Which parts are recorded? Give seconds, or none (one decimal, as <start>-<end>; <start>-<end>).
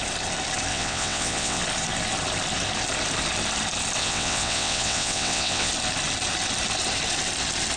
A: 0.0-0.7; 1.6-4.0; 5.7-7.8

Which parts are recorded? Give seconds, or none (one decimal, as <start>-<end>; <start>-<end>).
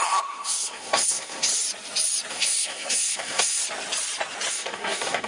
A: 1.5-2.3; 3.6-4.5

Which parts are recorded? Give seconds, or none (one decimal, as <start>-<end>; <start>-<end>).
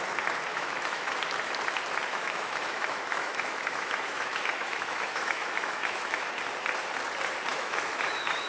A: 0.0-0.5; 1.1-2.1; 6.3-7.5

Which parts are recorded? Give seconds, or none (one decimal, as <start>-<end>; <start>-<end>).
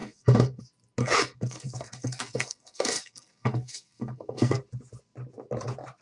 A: 0.6-1.0; 4.6-6.0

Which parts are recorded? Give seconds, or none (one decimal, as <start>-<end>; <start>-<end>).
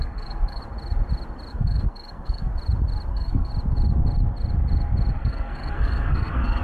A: 0.6-1.5; 2.5-3.1; 3.5-5.1